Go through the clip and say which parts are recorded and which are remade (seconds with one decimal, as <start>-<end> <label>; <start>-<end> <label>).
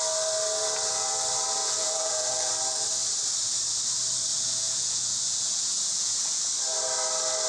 0.0-1.6 recorded; 1.6-2.5 remade; 2.5-4.3 recorded; 4.3-6.5 remade; 6.5-7.5 recorded